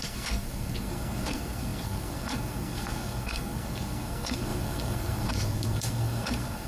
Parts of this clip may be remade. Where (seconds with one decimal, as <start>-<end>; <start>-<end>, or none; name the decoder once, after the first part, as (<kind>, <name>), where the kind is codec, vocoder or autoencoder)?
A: 0.0-6.7 (codec, SNAC)